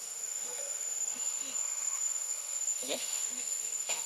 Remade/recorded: remade